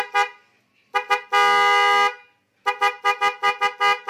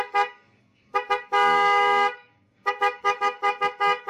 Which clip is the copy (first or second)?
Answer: second